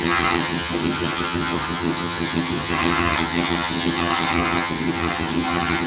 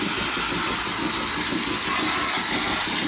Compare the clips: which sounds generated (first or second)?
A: first